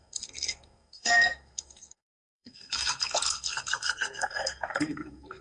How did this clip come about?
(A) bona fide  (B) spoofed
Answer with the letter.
B